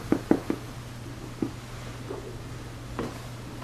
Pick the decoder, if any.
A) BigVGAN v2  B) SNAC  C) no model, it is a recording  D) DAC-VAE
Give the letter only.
C